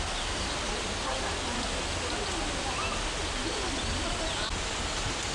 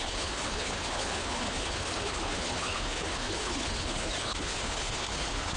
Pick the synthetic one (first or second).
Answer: second